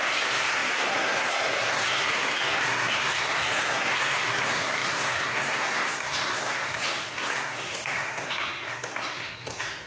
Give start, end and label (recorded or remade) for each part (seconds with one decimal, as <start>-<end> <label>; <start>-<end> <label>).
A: 0.0-9.9 remade